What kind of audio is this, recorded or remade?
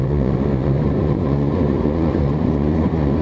remade